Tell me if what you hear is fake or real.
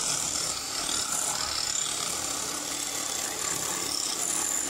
real